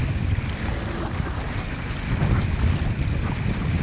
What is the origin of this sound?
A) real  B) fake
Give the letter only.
A